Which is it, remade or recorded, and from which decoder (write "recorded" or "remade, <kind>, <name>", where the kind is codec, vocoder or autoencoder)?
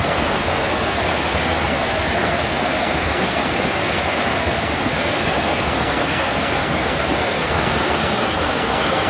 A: remade, codec, SNAC